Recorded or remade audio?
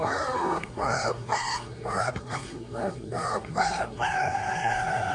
remade